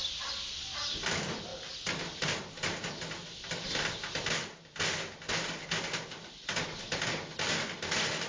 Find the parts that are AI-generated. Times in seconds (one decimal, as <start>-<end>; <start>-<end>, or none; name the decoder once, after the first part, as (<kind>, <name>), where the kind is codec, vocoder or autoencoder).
none